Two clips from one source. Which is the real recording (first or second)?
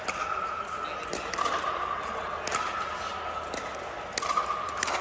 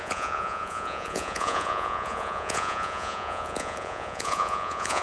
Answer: first